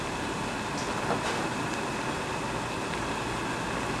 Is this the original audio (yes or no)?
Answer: yes